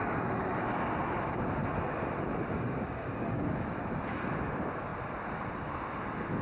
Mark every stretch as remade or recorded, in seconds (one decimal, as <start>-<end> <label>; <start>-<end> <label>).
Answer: 0.0-2.5 recorded; 2.5-3.8 remade; 3.8-6.4 recorded